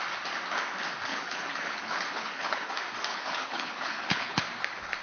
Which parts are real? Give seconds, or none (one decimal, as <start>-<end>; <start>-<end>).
0.0-1.1; 2.7-3.1; 4.4-5.0